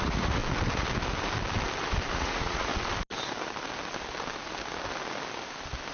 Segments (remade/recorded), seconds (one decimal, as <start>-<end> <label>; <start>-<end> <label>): 0.0-0.4 remade; 0.4-2.1 recorded; 2.1-2.7 remade; 2.7-5.9 recorded